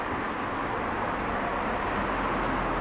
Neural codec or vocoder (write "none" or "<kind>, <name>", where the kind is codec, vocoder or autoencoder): none